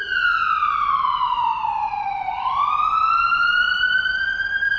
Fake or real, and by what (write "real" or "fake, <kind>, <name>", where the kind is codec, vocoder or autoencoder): fake, vocoder, BigVGAN v2